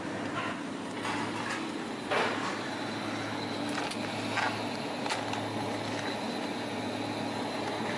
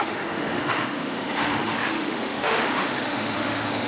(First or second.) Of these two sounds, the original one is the first